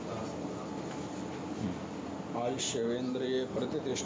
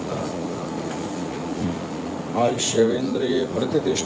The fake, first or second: second